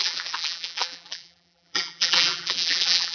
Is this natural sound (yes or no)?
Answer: no